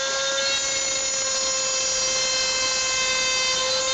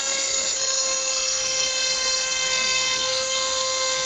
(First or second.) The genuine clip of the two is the first